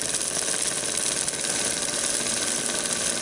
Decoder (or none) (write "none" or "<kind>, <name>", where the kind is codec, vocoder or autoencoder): none